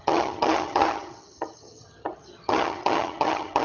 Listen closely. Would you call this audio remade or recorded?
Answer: remade